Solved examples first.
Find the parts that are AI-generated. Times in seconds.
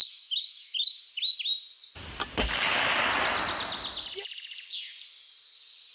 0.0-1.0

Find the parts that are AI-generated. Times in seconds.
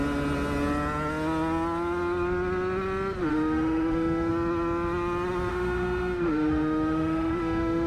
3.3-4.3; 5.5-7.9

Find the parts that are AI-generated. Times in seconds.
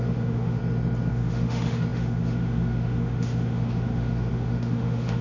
0.0-0.6; 1.1-5.2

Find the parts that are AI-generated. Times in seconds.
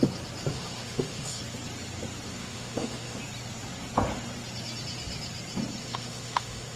0.5-1.4; 2.4-3.2; 5.8-6.8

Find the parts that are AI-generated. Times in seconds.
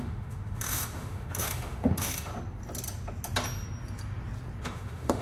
0.0-2.3; 4.6-5.2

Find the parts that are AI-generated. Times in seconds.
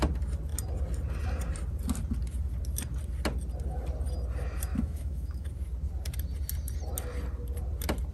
4.7-5.5